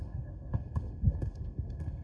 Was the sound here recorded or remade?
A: remade